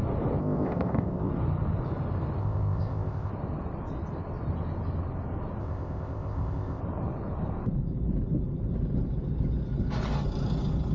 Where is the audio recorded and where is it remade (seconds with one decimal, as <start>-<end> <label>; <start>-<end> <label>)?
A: 0.0-0.4 recorded; 0.4-1.3 remade; 1.3-2.4 recorded; 2.4-3.3 remade; 3.3-5.6 recorded; 5.6-6.8 remade; 6.8-10.9 recorded